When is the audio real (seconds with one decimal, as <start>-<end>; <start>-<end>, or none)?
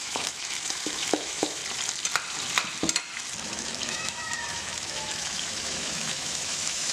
1.6-3.4